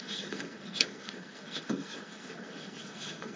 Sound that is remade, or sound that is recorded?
remade